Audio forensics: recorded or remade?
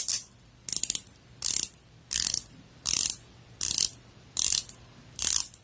remade